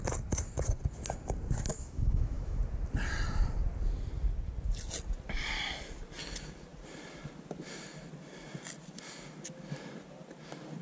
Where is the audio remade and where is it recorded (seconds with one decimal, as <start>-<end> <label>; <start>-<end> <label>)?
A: 0.0-1.7 recorded; 1.7-2.6 remade; 2.6-10.8 recorded